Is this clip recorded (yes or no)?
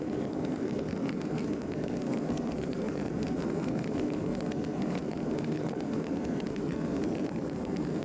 no